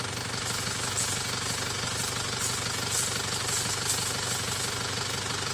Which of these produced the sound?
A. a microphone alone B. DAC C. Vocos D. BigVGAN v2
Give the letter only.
A